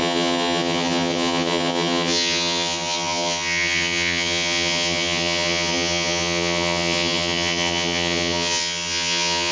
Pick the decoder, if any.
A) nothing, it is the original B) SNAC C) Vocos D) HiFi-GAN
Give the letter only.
D